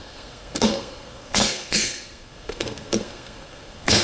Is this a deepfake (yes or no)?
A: yes